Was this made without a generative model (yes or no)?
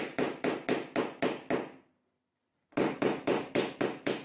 yes